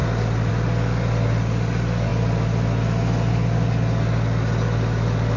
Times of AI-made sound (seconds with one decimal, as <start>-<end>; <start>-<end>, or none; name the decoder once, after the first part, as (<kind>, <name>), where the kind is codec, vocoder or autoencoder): none